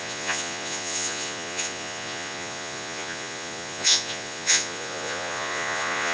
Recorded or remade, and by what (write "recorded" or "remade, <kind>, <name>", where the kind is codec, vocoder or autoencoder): remade, vocoder, Vocos